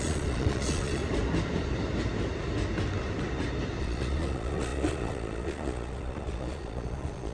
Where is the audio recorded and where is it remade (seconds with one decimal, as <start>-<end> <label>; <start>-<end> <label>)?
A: 0.0-1.0 remade; 1.0-3.8 recorded; 3.8-7.3 remade